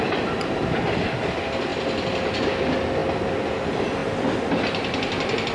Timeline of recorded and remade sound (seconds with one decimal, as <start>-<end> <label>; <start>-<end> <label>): 0.0-5.5 recorded

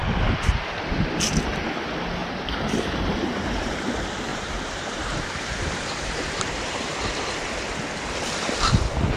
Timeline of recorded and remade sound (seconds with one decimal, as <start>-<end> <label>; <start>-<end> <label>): 0.0-2.2 recorded; 2.2-3.9 remade; 3.9-4.3 recorded; 4.3-6.9 remade; 6.9-9.2 recorded

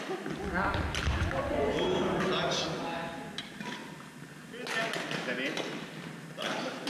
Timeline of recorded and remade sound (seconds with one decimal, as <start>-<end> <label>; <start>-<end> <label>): 0.0-6.9 recorded

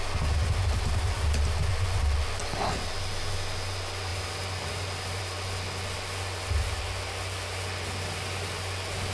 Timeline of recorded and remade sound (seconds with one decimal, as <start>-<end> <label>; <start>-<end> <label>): 0.0-9.1 recorded

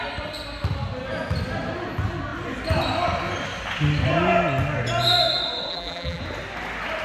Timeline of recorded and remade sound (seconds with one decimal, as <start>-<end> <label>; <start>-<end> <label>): 0.0-5.7 recorded; 5.7-6.2 remade; 6.2-7.0 recorded

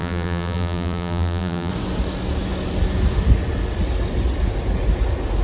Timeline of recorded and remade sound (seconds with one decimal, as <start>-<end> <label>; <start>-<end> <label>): 0.0-1.7 remade; 1.7-5.4 recorded

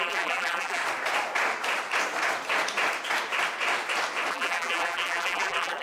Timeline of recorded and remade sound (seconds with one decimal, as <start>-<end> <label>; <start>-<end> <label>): 0.0-0.8 remade; 0.8-4.3 recorded; 4.3-5.8 remade

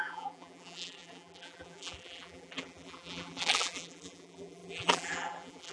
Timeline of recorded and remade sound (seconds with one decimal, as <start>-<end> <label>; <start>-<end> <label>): 0.0-5.7 remade